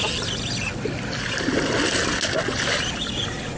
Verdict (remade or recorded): recorded